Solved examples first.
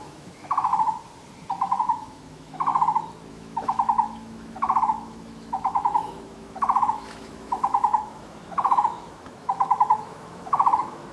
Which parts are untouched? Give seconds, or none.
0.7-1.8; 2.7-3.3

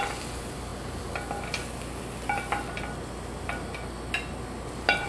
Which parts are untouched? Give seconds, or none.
0.0-5.1

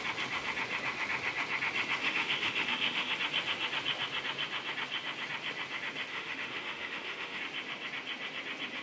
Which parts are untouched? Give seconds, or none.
0.0-2.0; 3.1-6.1; 7.4-8.8

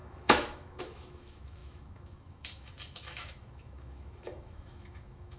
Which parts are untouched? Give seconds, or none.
none